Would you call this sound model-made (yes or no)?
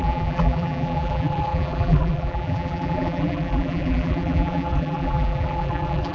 yes